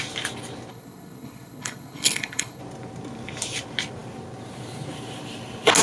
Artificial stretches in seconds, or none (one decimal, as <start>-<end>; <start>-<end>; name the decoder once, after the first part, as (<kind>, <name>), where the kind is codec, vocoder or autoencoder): 0.7-2.6 (codec, HILCodec)